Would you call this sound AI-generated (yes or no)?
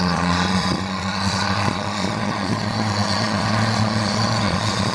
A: yes